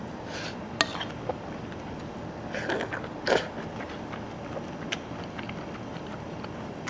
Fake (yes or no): no